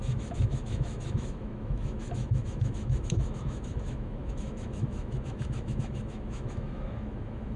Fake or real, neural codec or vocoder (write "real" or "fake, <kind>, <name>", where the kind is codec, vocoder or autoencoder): fake, autoencoder, DAC-VAE